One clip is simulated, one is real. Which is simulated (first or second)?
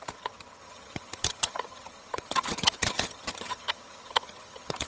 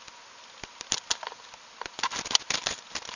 first